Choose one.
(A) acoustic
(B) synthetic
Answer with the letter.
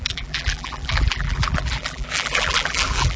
B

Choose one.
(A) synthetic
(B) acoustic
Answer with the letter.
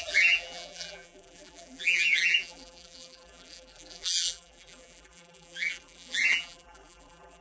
A